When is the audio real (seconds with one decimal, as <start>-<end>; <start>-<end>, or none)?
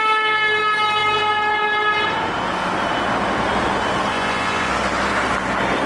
0.0-4.1; 4.7-5.9